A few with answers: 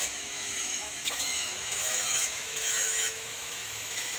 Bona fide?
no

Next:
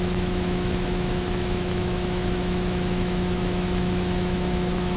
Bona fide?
no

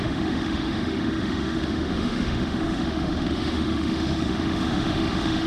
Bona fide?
no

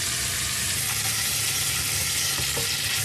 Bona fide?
yes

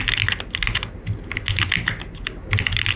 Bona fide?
yes